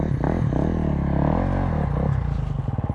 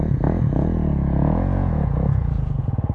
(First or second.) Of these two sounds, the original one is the first